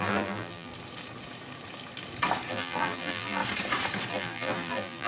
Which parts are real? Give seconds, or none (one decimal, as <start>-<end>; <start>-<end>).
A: 0.7-2.5; 3.4-4.1